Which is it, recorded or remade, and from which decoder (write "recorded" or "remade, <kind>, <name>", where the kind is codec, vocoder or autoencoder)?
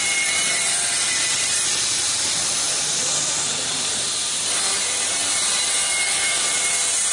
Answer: remade, vocoder, BigVGAN v2